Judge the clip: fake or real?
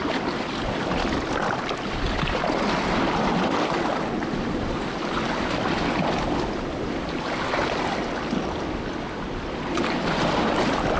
real